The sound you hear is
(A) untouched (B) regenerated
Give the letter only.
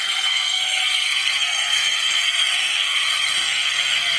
B